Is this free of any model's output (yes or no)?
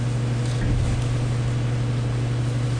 yes